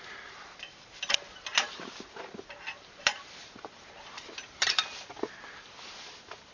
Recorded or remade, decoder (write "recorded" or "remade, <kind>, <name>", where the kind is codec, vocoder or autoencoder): remade, vocoder, BigVGAN v2